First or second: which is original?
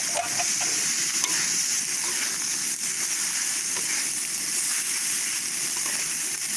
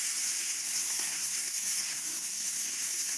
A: first